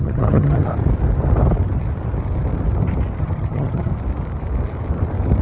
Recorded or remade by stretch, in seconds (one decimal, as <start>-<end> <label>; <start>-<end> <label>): 0.0-0.7 remade; 0.7-3.2 recorded; 3.2-3.9 remade; 3.9-5.4 recorded